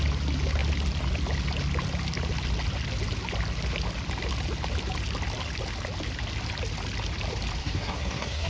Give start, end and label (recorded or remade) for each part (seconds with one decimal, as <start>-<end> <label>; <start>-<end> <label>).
0.0-7.6 recorded; 7.6-8.5 remade